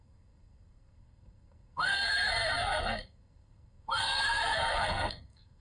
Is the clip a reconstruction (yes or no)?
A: yes